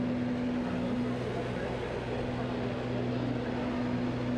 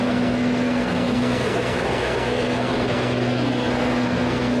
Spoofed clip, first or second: second